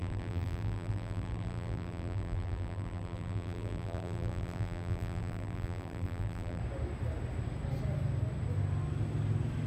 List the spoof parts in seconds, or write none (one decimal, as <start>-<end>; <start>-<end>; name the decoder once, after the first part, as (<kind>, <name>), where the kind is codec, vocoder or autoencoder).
0.0-6.6 (vocoder, BigVGAN v2)